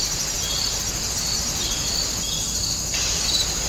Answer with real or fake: real